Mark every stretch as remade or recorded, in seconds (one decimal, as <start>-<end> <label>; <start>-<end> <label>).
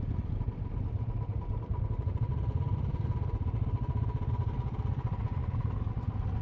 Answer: 0.0-6.4 recorded